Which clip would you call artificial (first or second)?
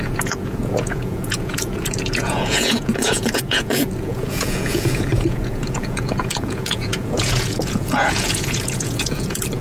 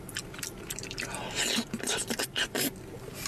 first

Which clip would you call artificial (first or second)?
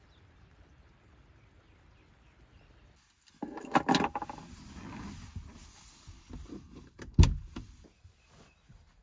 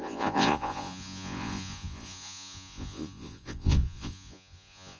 second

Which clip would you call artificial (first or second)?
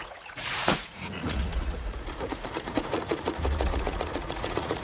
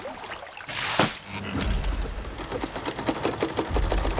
first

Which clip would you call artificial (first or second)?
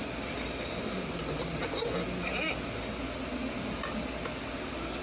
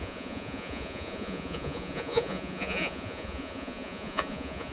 second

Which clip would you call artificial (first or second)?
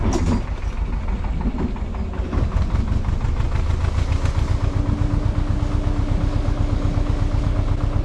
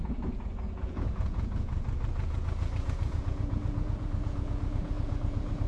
second